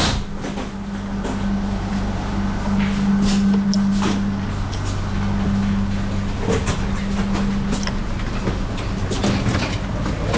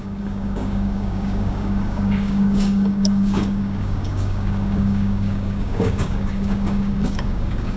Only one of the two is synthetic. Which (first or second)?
second